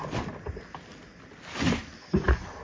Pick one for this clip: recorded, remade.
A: recorded